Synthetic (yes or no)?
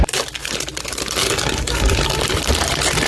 yes